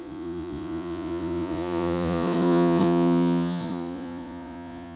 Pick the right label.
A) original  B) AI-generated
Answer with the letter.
B